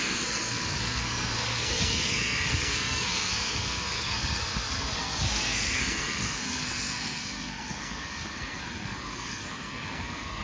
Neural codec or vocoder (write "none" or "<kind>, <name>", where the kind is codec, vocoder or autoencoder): codec, SNAC